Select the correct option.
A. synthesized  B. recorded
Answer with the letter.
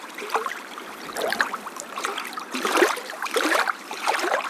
A